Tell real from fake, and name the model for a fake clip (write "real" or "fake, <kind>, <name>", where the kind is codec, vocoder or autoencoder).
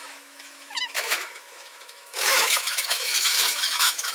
fake, autoencoder, DAC-VAE